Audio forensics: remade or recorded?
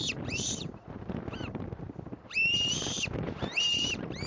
remade